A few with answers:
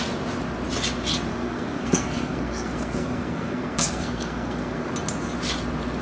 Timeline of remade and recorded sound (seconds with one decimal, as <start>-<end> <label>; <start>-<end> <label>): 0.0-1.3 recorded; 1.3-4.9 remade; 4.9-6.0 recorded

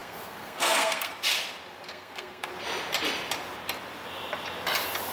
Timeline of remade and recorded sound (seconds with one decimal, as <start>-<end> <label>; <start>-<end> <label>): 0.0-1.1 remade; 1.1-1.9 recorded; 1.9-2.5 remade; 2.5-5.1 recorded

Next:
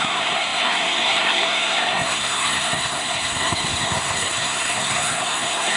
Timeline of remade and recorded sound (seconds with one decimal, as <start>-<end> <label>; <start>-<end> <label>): 0.0-5.8 remade

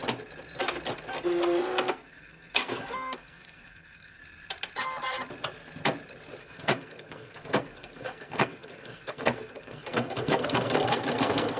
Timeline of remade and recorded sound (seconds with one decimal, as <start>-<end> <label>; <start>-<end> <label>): 0.0-1.9 recorded; 1.9-4.2 remade; 4.2-6.4 recorded; 6.4-11.6 remade